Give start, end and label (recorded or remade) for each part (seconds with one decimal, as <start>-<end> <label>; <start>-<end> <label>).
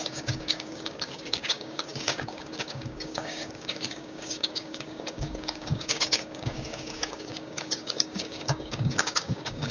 0.0-9.7 remade